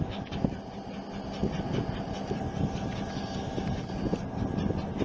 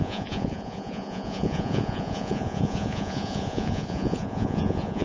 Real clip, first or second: first